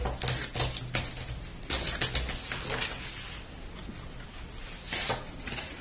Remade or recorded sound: recorded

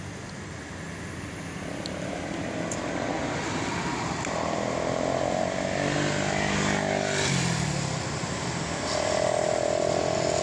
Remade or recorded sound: recorded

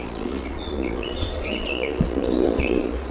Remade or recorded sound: remade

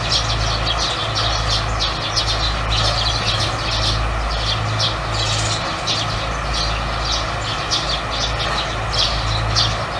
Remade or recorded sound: recorded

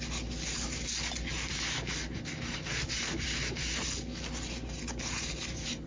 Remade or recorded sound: recorded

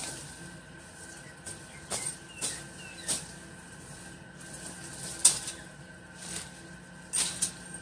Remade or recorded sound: recorded